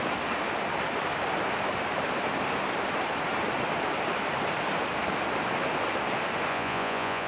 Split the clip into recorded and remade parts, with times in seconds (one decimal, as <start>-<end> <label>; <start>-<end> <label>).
0.0-6.5 recorded; 6.5-7.3 remade